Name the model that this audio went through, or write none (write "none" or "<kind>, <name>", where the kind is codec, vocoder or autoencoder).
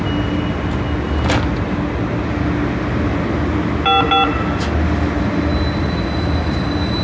none